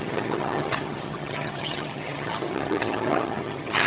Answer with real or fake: fake